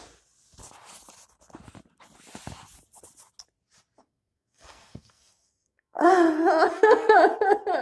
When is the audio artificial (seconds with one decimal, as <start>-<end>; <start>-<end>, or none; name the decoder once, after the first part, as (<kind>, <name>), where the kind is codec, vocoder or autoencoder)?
4.0-6.1 (codec, SNAC); 6.7-7.2